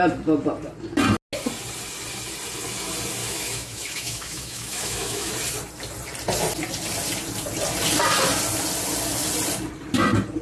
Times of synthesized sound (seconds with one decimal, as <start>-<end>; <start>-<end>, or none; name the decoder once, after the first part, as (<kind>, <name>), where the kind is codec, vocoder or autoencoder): 3.2-5.3 (autoencoder, DAC-VAE)